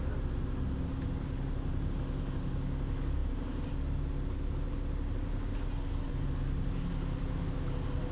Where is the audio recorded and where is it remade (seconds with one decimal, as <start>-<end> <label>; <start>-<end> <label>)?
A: 0.0-8.1 recorded